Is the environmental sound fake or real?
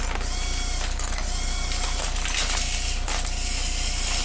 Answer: real